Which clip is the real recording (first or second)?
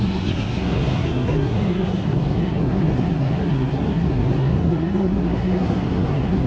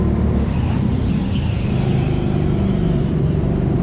second